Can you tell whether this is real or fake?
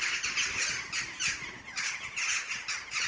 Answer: real